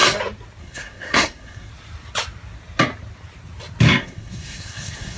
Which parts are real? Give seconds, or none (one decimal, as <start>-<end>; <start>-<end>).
0.0-0.6; 1.7-4.0